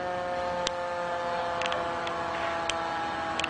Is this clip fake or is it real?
real